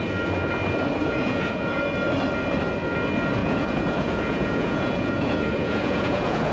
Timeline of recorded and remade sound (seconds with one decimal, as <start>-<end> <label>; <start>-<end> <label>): 0.0-1.0 recorded; 1.0-1.8 remade; 1.8-3.4 recorded; 3.4-6.5 remade